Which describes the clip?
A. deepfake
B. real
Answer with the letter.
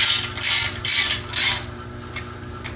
B